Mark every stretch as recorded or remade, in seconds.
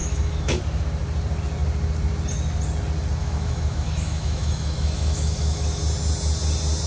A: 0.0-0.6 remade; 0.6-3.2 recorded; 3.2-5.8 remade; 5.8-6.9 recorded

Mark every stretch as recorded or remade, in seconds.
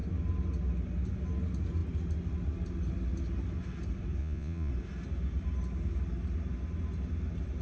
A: 0.0-4.2 recorded; 4.2-4.7 remade; 4.7-7.6 recorded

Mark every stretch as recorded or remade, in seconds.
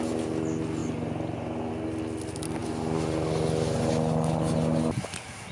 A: 0.0-5.5 recorded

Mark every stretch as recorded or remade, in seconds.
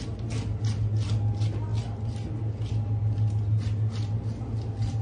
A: 0.0-5.0 recorded